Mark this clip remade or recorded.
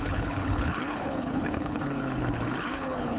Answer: remade